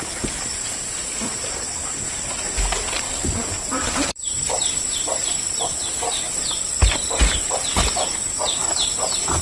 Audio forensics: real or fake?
fake